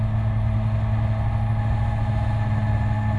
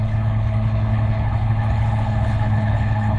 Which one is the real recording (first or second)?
first